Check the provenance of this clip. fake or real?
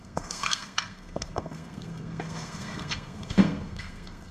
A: fake